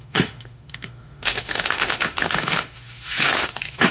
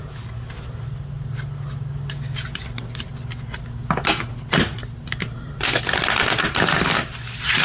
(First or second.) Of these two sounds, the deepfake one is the first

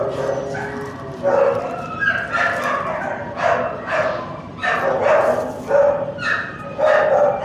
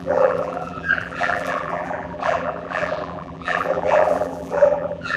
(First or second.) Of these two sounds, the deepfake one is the second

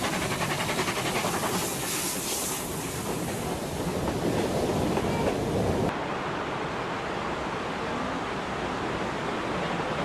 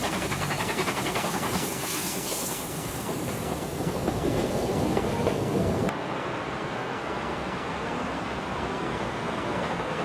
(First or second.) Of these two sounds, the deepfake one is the second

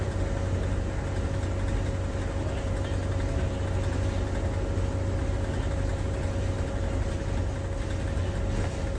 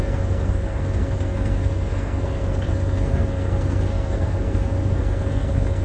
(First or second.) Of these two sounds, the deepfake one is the second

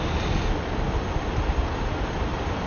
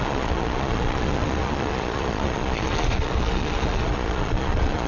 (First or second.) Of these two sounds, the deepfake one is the second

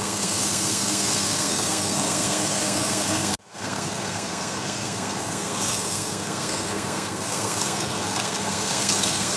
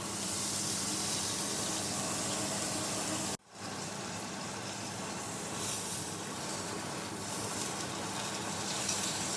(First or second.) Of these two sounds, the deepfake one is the first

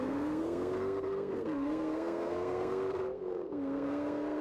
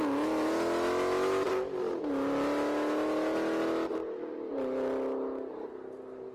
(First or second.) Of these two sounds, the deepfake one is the first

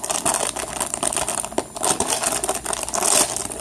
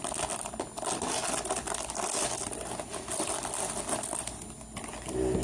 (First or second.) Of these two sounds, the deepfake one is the first